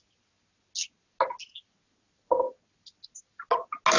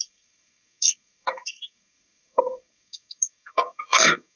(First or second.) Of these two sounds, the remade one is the second